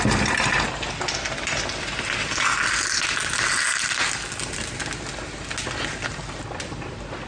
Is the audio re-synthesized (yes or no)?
no